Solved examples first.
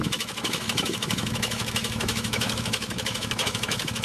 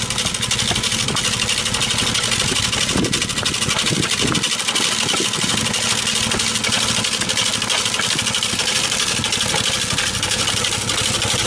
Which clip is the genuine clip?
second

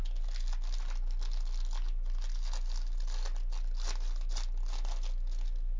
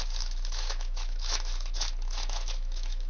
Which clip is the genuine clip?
first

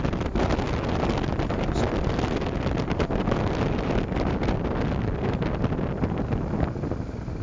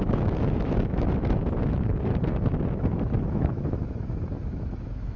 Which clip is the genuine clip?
first